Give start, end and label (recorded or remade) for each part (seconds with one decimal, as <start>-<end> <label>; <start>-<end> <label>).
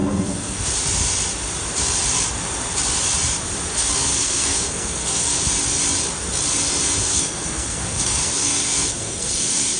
0.0-0.6 remade; 0.6-3.7 recorded; 3.7-5.4 remade; 5.4-7.0 recorded; 7.0-9.8 remade